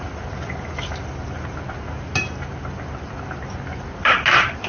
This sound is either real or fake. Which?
real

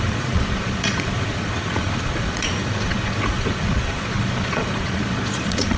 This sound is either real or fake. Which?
fake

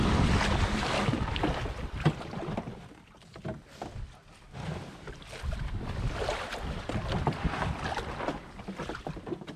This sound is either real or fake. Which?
real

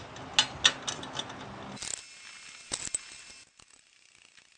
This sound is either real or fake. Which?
real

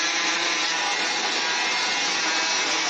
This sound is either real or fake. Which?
real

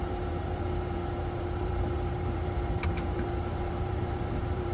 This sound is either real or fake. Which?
fake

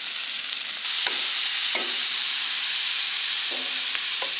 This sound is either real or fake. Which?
real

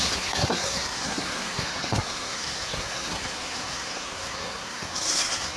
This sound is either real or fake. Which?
fake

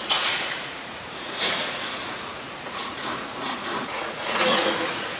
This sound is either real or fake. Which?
fake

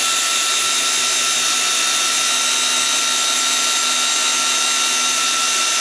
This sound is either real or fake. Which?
real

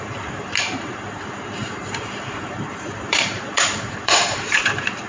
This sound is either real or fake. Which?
fake